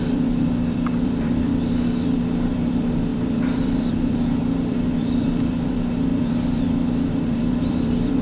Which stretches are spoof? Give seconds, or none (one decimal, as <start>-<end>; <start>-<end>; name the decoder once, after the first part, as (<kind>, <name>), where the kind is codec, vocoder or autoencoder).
0.0-8.2 (vocoder, BigVGAN v2)